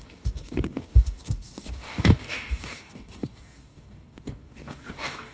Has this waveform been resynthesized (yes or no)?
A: yes